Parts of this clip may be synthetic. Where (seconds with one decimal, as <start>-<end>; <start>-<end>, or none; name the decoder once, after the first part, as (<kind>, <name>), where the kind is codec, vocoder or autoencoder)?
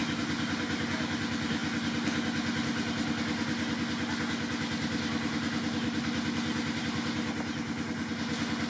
none